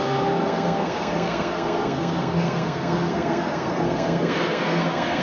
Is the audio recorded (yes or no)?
no